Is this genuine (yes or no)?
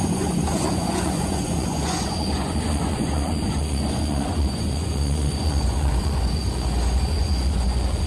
no